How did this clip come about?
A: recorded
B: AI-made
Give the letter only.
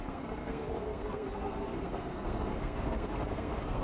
B